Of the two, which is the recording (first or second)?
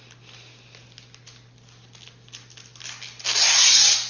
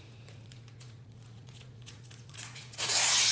first